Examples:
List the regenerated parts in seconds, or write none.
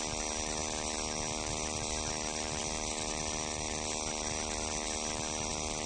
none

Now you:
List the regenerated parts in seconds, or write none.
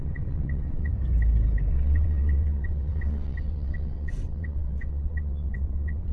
0.0-0.9 (vocoder, WaveNeXt); 1.7-6.1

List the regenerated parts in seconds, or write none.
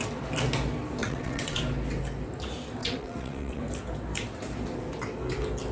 1.0-1.6 (vocoder, WaveNeXt); 2.8-3.6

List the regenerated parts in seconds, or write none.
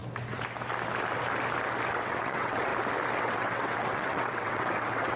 1.9-2.7 (vocoder, WaveNeXt); 3.2-5.2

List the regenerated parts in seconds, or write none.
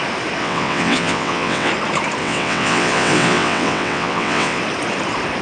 0.4-1.7 (vocoder, WaveNeXt); 2.2-4.6